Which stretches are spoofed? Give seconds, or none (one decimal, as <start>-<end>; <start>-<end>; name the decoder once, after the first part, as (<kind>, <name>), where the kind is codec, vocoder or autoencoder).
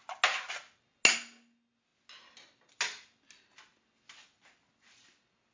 none